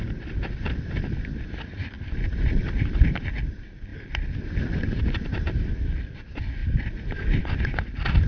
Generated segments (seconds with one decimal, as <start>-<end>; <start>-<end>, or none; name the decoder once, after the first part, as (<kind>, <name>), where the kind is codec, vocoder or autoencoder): none